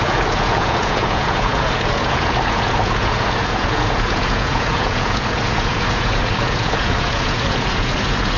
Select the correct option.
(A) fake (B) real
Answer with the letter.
A